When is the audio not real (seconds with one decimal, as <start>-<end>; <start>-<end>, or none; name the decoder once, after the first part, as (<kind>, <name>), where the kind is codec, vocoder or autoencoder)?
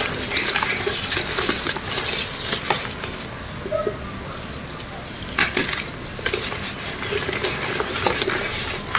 none